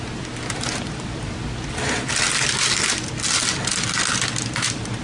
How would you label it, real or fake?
real